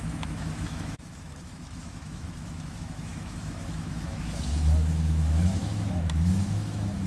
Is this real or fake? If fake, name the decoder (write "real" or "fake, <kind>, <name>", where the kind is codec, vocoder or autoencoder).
fake, autoencoder, DAC-VAE